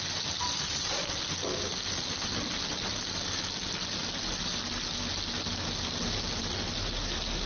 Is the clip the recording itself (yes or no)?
yes